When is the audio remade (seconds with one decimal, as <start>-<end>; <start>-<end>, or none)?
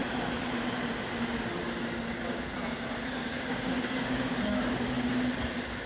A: 3.2-4.6